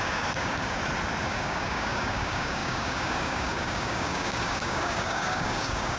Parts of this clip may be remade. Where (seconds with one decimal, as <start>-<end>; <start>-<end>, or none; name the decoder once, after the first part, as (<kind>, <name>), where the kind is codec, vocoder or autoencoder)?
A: 0.0-0.8 (codec, DAC); 1.3-6.0